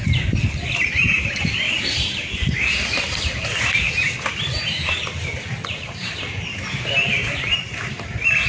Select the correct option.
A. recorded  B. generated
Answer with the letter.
B